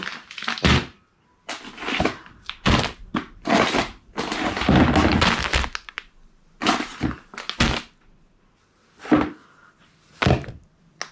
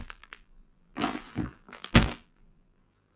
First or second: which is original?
first